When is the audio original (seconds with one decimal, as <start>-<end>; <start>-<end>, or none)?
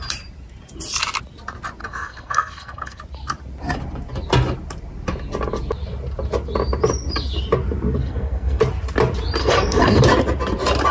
0.0-1.8; 3.0-8.0; 8.6-9.4; 10.0-10.9